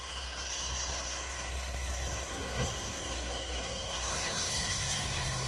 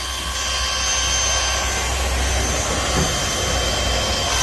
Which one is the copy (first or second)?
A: first